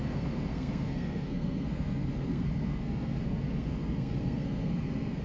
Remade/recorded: remade